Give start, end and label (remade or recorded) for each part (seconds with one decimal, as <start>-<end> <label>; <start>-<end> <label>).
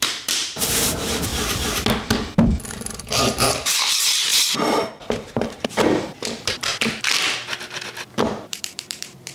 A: 0.0-1.3 remade; 1.3-2.7 recorded; 2.7-6.7 remade; 6.7-8.1 recorded; 8.1-9.3 remade